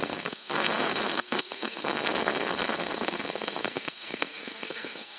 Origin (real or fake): fake